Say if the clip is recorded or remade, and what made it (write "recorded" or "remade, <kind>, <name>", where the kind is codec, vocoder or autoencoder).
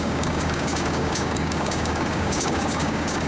remade, codec, DAC